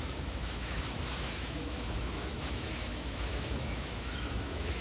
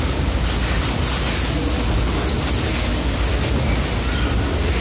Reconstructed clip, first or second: first